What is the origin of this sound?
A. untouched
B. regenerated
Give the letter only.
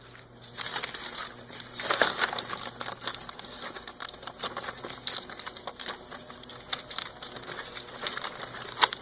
A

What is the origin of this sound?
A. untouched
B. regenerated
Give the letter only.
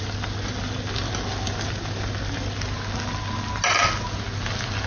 A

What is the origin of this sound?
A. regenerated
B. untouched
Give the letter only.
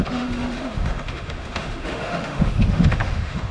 A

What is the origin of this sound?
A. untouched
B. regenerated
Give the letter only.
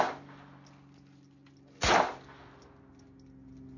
A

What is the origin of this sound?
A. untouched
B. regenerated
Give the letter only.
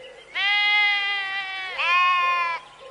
A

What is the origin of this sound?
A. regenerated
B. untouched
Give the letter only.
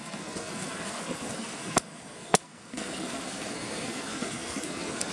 A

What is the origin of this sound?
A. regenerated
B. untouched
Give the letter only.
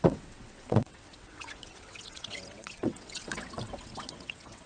A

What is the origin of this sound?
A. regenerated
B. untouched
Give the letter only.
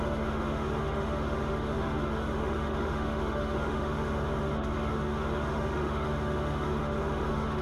A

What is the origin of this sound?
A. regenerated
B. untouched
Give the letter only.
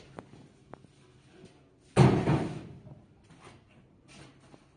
B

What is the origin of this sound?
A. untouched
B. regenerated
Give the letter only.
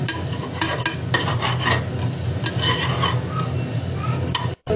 A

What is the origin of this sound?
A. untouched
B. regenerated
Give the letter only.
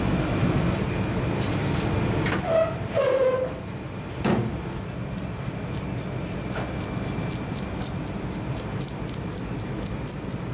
A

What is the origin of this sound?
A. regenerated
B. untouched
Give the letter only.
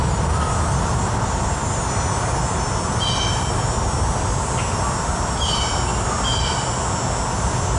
B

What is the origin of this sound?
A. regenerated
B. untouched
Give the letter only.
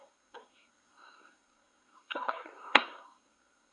A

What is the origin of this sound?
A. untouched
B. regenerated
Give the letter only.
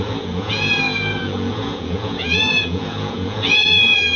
B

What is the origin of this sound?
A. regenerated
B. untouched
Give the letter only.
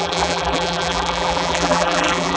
A